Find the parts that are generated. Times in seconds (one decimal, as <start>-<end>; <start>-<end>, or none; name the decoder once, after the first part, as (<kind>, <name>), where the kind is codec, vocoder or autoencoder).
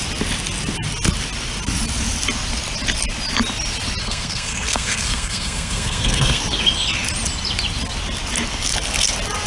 4.0-6.4 (codec, SNAC)